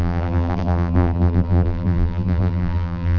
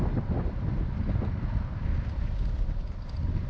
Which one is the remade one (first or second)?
first